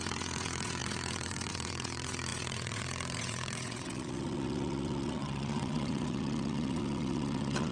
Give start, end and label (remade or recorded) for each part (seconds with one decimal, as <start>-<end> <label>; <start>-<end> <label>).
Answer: 0.0-7.7 remade

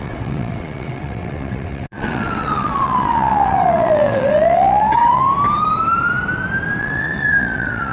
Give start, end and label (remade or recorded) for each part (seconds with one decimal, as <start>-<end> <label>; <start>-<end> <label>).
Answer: 0.0-5.2 remade; 5.2-6.8 recorded; 6.8-7.9 remade

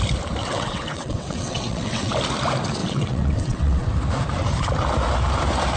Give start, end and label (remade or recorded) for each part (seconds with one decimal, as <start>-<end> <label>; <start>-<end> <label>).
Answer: 0.0-0.4 recorded; 0.4-2.1 remade; 2.1-2.8 recorded; 2.8-3.9 remade; 3.9-5.8 recorded

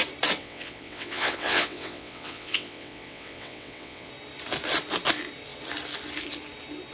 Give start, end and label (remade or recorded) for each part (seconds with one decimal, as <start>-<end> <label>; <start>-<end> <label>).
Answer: 0.0-0.4 recorded; 0.4-4.1 remade; 4.1-6.9 recorded

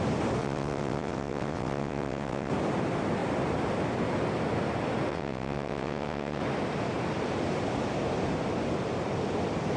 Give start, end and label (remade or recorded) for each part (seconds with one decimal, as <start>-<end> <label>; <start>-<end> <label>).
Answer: 0.0-0.4 recorded; 0.4-2.5 remade; 2.5-5.1 recorded; 5.1-6.4 remade; 6.4-9.8 recorded

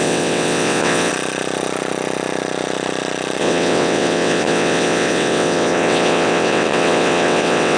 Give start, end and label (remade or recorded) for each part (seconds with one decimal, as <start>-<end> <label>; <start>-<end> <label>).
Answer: 0.0-1.1 remade; 1.1-3.4 recorded; 3.4-7.8 remade

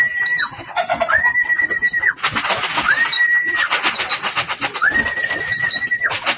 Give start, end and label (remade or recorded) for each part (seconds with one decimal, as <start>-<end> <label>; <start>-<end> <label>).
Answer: 0.0-6.4 recorded